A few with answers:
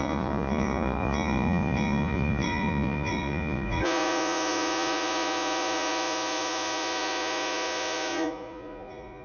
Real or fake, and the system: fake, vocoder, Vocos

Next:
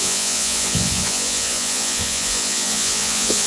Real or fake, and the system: fake, vocoder, Vocos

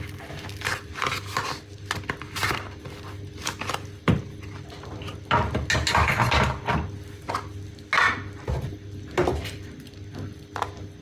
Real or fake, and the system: real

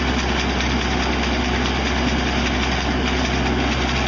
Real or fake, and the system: real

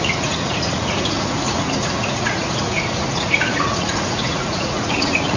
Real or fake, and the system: fake, vocoder, Vocos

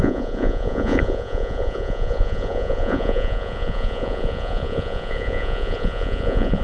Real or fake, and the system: fake, vocoder, Vocos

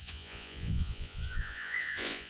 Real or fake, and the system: fake, vocoder, Vocos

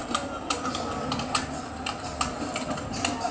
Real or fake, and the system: real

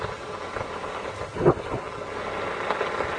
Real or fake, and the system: real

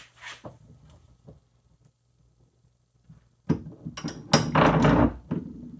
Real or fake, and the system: real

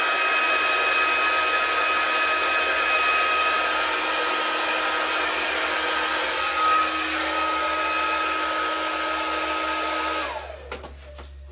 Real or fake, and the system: real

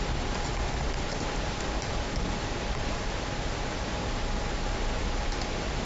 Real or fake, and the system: real